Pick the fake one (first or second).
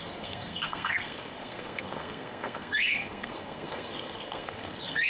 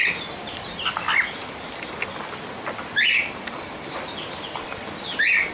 first